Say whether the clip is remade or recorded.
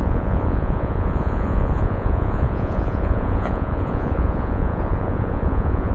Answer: remade